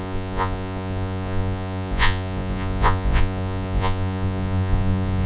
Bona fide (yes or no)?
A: no